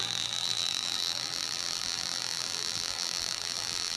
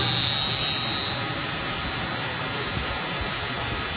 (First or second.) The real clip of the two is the second